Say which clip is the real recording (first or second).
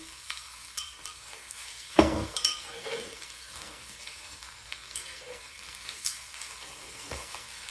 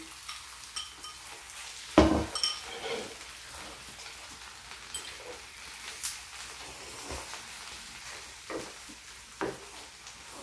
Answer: second